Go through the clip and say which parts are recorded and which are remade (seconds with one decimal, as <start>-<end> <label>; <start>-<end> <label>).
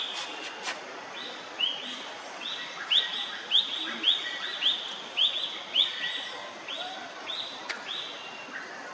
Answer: 0.0-4.5 recorded; 4.5-5.3 remade; 5.3-8.9 recorded